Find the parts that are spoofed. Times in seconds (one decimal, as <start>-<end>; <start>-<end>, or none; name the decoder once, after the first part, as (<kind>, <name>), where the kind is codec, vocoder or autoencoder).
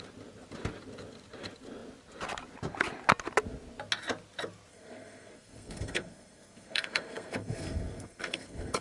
4.7-8.8 (codec, SNAC)